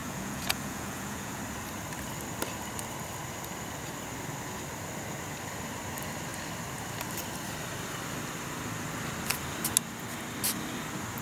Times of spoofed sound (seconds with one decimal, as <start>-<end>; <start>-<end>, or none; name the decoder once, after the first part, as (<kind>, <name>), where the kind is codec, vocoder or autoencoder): 0.0-1.4 (vocoder, Vocos)